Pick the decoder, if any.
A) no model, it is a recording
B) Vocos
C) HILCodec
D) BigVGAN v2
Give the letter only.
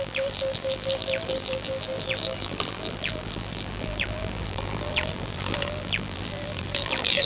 D